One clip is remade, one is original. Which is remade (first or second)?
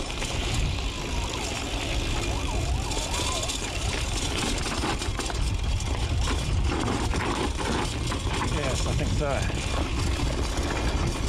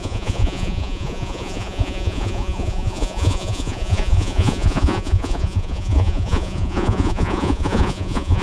second